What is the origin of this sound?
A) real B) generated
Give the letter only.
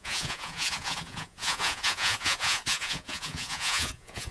B